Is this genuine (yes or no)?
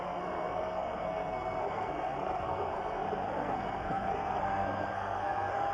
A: no